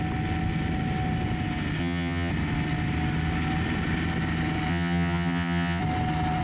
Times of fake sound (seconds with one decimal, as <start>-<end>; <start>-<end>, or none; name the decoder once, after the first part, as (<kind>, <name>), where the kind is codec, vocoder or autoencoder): 1.8-2.3 (vocoder, HiFi-GAN); 4.7-5.8